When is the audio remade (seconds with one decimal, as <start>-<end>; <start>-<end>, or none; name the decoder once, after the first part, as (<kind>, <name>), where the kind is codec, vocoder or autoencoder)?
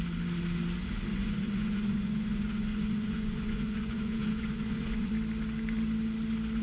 1.1-5.1 (vocoder, Vocos)